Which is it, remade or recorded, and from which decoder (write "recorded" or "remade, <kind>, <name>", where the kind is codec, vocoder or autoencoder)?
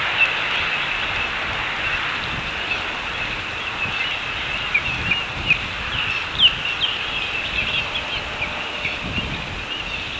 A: recorded